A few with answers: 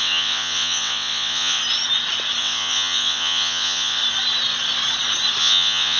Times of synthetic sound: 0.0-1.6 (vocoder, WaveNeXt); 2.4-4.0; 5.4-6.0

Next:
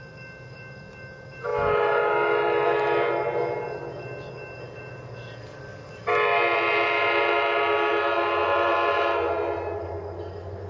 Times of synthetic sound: 4.8-5.6 (vocoder, Vocos)

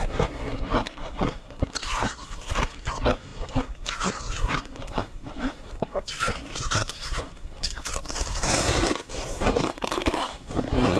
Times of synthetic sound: 0.0-11.0 (codec, SNAC)

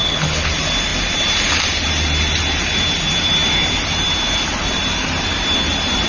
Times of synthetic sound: 0.0-0.5 (codec, HILCodec)

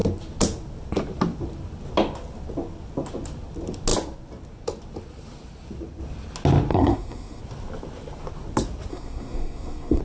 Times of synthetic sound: 6.7-7.4 (codec, SNAC); 8.9-10.0

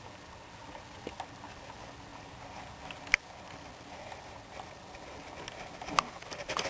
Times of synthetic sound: none

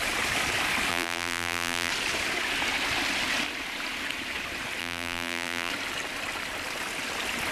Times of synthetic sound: 0.9-1.9 (vocoder, BigVGAN v2); 4.8-5.7

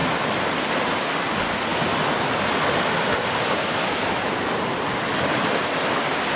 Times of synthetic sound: none